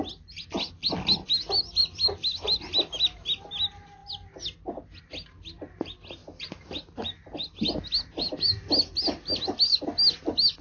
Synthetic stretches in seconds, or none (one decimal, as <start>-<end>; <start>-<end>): none